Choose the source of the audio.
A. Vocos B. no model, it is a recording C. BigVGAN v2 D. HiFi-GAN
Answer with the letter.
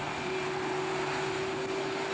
B